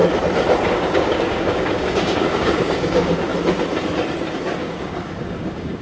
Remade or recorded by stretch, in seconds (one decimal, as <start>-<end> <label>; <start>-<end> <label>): 0.0-0.7 recorded; 0.7-3.3 remade; 3.3-4.6 recorded; 4.6-5.8 remade